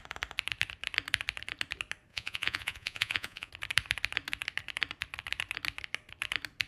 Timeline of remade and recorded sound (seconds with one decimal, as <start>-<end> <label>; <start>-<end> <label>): 0.0-2.1 recorded; 2.1-3.5 remade; 3.5-6.7 recorded